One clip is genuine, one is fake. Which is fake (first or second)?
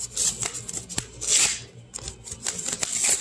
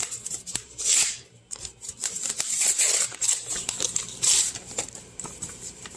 second